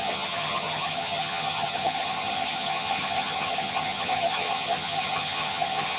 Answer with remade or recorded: remade